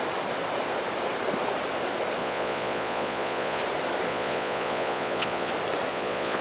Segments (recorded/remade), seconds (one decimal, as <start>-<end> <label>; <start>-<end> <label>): 0.0-2.2 recorded; 2.2-3.6 remade; 3.6-4.1 recorded; 4.1-5.5 remade; 5.5-5.9 recorded; 5.9-6.4 remade

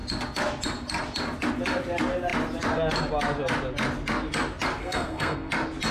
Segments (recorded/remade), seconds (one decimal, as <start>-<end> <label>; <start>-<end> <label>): 0.0-4.8 recorded; 4.8-5.5 remade; 5.5-5.9 recorded

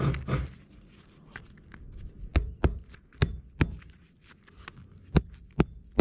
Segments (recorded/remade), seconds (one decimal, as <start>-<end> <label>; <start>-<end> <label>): 0.0-6.0 recorded

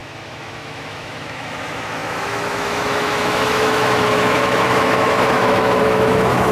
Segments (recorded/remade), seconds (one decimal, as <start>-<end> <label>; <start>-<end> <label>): 0.0-6.5 remade

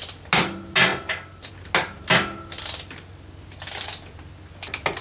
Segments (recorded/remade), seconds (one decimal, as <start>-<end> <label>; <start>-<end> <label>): 0.0-5.0 recorded

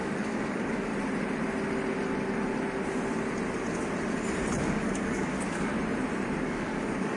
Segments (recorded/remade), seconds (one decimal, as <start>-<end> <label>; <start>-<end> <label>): 0.0-0.9 remade; 0.9-4.7 recorded; 4.7-5.7 remade; 5.7-6.4 recorded; 6.4-7.2 remade

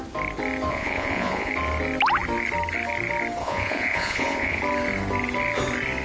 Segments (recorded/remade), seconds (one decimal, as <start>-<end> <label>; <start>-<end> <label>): 0.0-0.7 recorded; 0.7-1.5 remade; 1.5-3.4 recorded; 3.4-4.6 remade; 4.6-6.0 recorded

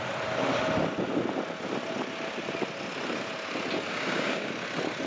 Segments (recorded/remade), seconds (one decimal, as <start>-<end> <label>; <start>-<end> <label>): 0.0-3.9 recorded; 3.9-4.5 remade; 4.5-5.1 recorded